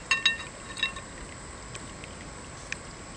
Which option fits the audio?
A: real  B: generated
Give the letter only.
A